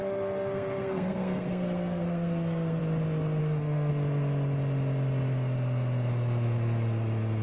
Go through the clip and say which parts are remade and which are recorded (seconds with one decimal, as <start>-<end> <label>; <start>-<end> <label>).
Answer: 0.0-2.8 remade; 2.8-3.4 recorded; 3.4-3.9 remade; 3.9-7.4 recorded